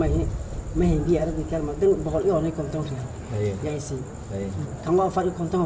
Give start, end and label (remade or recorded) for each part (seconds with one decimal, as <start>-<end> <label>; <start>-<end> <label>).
0.0-5.7 recorded